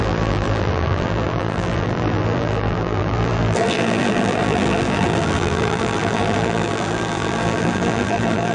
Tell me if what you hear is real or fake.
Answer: fake